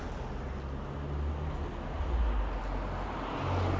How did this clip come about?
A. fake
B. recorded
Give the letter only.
B